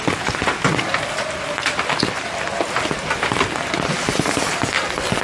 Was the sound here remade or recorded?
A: recorded